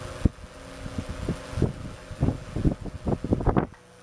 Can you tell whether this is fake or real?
real